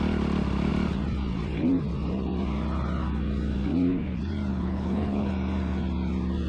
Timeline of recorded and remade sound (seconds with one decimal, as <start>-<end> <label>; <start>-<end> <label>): 0.0-4.5 recorded; 4.5-5.3 remade; 5.3-6.5 recorded